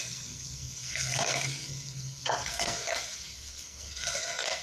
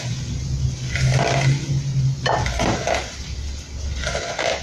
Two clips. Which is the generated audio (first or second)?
first